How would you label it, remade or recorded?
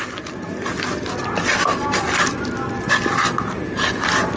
recorded